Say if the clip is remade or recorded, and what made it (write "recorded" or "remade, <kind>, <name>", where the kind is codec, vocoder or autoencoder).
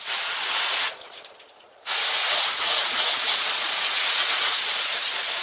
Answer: remade, vocoder, Vocos